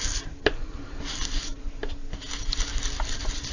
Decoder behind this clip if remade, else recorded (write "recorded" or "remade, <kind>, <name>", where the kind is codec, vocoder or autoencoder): recorded